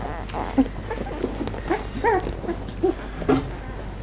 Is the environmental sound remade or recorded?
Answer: recorded